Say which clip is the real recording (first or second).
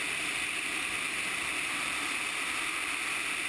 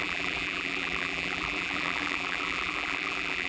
first